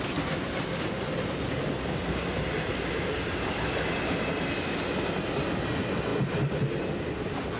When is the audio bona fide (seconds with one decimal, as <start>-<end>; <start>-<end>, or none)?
0.0-7.6